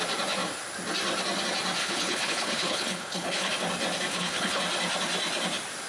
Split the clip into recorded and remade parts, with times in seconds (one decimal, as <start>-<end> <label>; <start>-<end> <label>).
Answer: 0.0-1.8 recorded; 1.8-3.5 remade; 3.5-4.1 recorded; 4.1-4.6 remade; 4.6-5.9 recorded